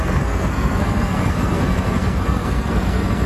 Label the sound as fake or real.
fake